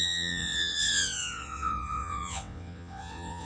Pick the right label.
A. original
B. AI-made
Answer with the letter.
B